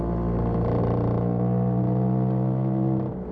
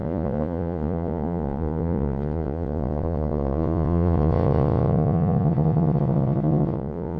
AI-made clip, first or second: second